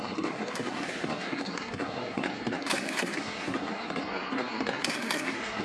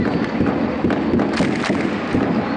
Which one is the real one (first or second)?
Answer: second